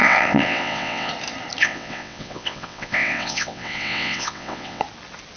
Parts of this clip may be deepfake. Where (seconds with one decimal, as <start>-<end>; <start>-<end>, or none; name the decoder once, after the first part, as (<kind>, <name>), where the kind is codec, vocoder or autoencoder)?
0.0-1.1 (vocoder, WaveNeXt); 1.6-4.8